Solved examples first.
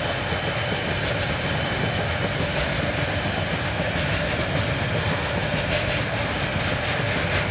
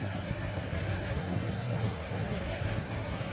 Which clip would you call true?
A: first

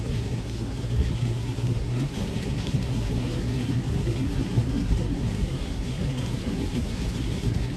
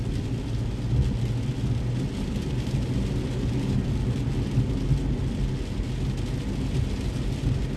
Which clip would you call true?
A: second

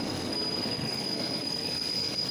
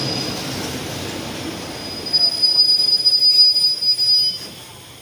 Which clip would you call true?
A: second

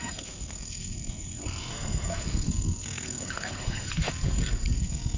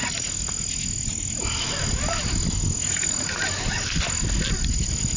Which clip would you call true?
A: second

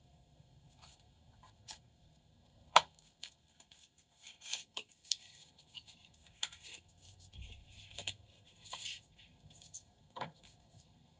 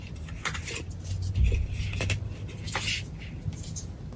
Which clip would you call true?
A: second